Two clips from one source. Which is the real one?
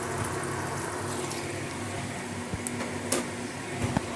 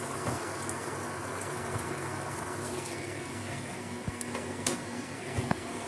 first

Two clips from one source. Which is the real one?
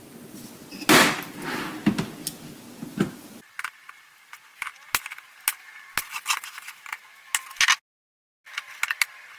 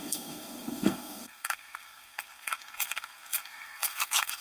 first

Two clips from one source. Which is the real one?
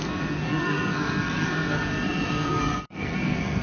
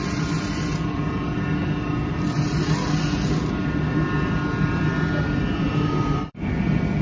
second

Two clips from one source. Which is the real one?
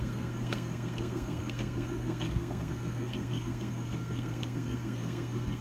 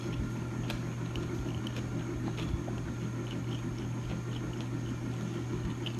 second